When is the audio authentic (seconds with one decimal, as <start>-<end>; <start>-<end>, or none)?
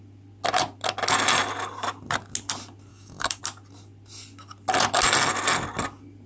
0.0-2.9; 3.4-6.3